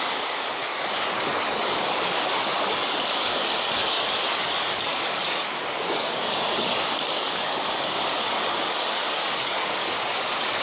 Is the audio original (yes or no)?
no